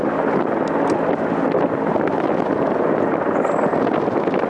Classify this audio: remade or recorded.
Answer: recorded